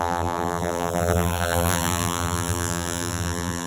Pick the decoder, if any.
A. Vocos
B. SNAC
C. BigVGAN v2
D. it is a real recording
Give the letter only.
C